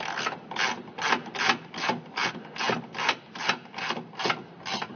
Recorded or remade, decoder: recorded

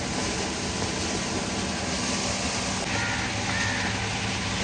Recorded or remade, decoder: recorded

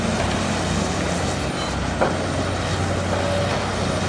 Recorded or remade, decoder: recorded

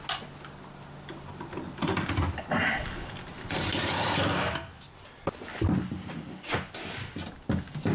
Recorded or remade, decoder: recorded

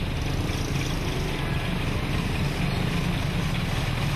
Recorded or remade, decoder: recorded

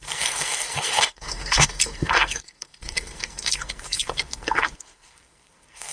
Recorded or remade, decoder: remade, codec, SNAC